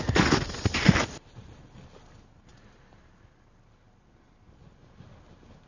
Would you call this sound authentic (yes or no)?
yes